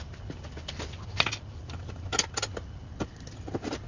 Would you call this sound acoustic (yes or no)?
yes